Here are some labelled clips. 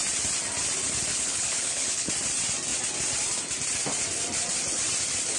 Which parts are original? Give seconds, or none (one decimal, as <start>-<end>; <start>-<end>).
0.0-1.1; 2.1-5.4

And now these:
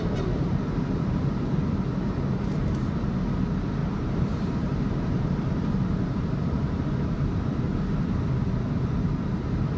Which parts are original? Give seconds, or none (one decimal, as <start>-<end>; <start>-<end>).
1.2-3.8; 6.9-9.8

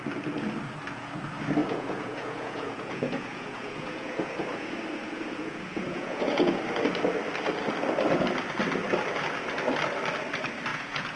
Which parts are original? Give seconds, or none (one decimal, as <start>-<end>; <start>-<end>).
0.0-1.6; 6.6-10.7

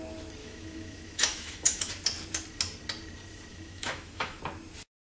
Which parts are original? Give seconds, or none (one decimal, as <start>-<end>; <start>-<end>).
0.0-0.4; 1.9-3.5; 4.4-5.1

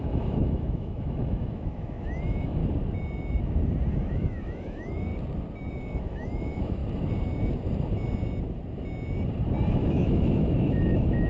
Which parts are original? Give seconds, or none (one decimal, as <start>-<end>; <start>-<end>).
2.6-3.9; 5.1-5.7; 6.8-9.7